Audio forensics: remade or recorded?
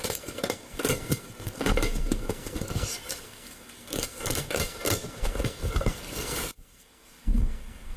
remade